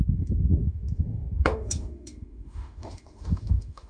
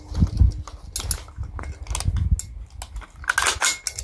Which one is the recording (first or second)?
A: second